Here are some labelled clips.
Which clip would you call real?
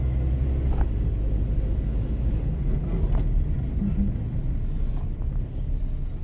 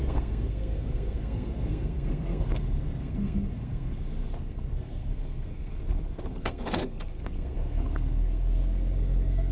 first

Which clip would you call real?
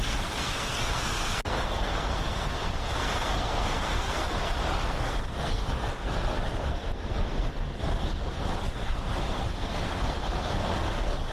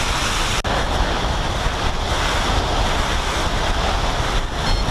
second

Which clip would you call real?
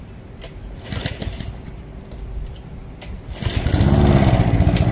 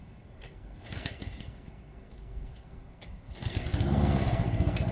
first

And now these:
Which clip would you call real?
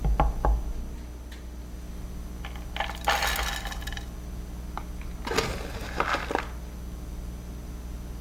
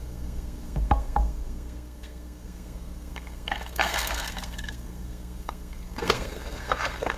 first